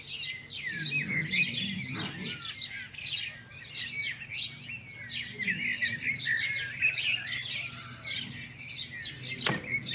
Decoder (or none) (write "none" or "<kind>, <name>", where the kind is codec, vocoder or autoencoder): none